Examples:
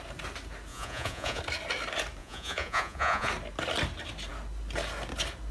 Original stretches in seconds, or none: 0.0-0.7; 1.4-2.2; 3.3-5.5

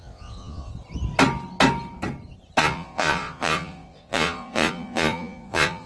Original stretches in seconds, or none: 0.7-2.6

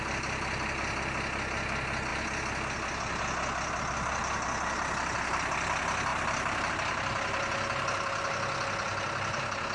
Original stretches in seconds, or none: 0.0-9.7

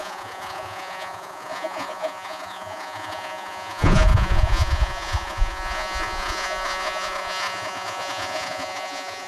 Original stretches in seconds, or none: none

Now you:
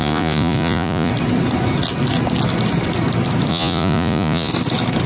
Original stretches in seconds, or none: 1.1-3.5; 4.5-5.1

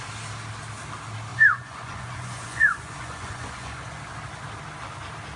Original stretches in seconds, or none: 0.0-1.3; 4.0-5.4

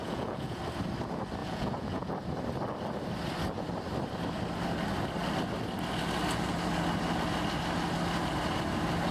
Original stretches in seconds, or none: 0.6-1.4; 2.1-9.1

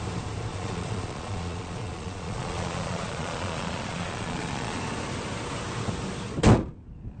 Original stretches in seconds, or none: 0.0-0.5; 4.8-7.2